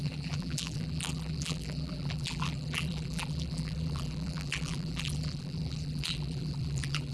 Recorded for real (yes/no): no